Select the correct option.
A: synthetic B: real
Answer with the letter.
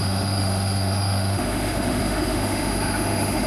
A